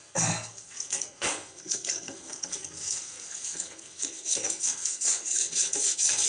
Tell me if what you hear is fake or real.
fake